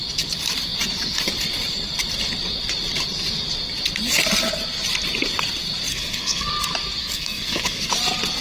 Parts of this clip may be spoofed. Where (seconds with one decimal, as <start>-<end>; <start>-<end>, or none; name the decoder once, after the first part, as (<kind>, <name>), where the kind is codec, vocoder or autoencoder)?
5.9-6.5 (codec, SNAC); 7.0-7.9